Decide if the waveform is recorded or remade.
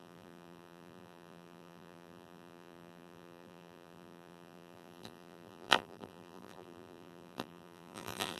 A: remade